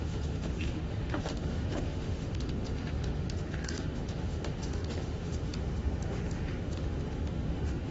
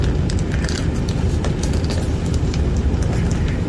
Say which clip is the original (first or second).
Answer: second